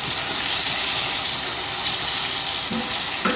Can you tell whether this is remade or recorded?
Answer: recorded